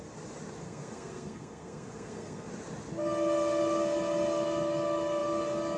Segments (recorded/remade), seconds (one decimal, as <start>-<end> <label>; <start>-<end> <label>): 0.0-0.6 recorded; 0.6-2.5 remade; 2.5-5.8 recorded